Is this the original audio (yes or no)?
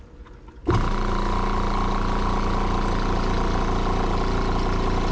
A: yes